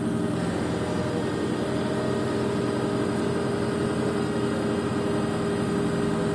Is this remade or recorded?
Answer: recorded